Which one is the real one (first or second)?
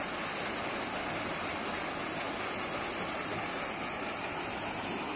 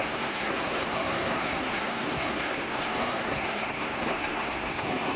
first